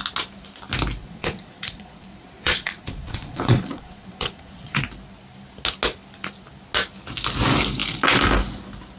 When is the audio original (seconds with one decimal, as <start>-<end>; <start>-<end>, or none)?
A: 0.0-1.0; 4.8-9.0